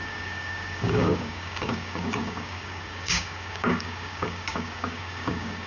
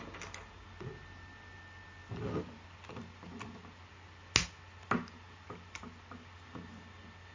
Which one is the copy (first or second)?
first